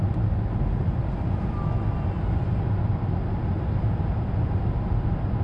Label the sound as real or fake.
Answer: real